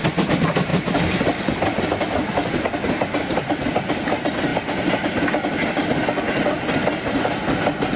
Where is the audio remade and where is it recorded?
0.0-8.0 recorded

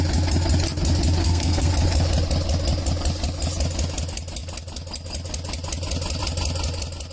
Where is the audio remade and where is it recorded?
0.0-1.2 recorded; 1.2-1.7 remade; 1.7-7.1 recorded

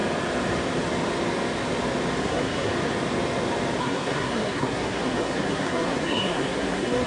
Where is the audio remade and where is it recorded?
0.0-2.2 recorded; 2.2-2.7 remade; 2.7-3.8 recorded; 3.8-7.1 remade

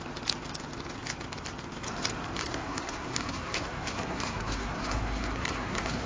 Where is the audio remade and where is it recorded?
0.0-2.4 recorded; 2.4-6.1 remade

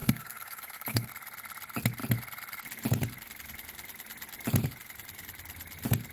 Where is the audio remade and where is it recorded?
0.0-1.1 remade; 1.1-6.1 recorded

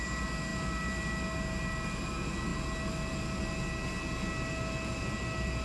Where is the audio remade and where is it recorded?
0.0-5.6 recorded